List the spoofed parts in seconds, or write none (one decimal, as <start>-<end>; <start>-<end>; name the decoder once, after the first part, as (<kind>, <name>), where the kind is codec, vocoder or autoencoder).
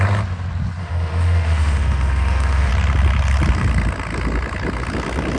0.8-2.7 (autoencoder, DAC-VAE)